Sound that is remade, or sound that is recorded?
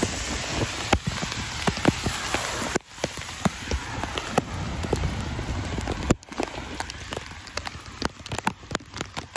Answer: recorded